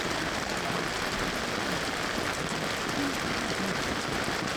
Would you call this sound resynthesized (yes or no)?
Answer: no